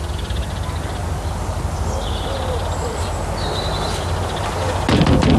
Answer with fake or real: real